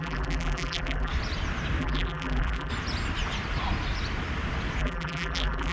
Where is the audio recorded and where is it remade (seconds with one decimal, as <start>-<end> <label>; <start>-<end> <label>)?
0.0-1.1 remade; 1.1-1.8 recorded; 1.8-2.7 remade; 2.7-4.8 recorded; 4.8-5.7 remade